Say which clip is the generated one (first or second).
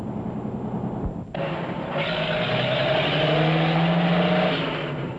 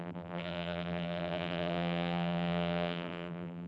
second